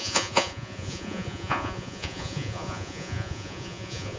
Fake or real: fake